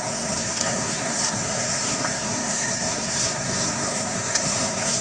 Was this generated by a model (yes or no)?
yes